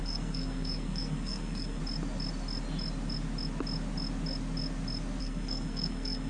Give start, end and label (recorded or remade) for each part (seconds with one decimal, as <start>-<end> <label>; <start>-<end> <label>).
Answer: 0.0-1.8 remade; 1.8-5.2 recorded; 5.2-6.3 remade